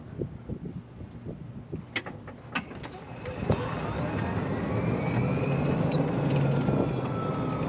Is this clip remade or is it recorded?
recorded